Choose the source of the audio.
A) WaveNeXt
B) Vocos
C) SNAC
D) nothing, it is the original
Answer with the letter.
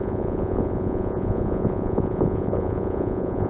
B